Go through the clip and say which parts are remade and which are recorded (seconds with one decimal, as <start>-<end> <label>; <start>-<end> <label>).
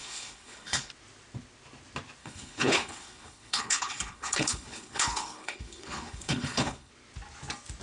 0.0-0.9 remade; 0.9-2.2 recorded; 2.2-6.9 remade; 6.9-7.8 recorded